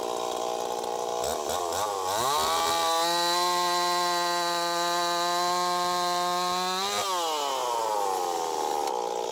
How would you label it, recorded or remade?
recorded